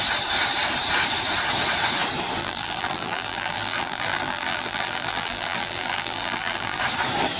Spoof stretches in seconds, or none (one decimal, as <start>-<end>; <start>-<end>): 2.4-6.8